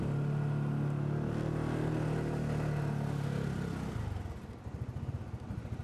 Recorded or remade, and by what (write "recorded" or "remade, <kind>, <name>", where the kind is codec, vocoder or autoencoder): recorded